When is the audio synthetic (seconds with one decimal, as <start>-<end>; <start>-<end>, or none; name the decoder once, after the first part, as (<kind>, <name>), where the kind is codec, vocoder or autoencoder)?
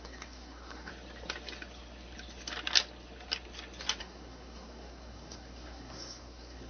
0.0-0.9 (codec, SNAC); 4.0-6.7